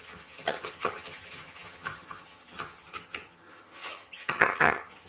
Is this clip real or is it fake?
fake